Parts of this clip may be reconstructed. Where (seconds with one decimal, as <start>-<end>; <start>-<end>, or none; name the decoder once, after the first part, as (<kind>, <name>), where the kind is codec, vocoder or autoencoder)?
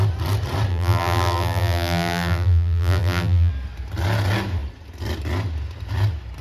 0.7-3.5 (vocoder, BigVGAN v2)